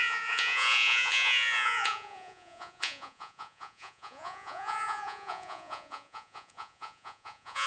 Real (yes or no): no